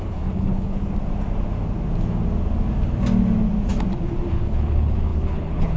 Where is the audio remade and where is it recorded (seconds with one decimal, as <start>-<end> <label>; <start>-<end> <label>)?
0.0-0.8 remade; 0.8-4.3 recorded; 4.3-5.8 remade